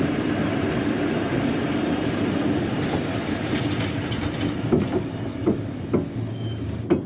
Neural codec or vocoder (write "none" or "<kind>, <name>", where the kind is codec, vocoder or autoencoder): none